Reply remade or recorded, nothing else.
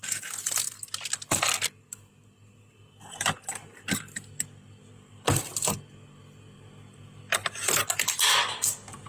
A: recorded